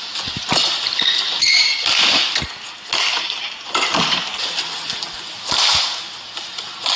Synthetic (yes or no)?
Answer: no